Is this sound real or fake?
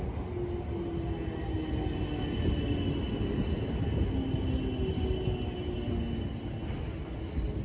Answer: real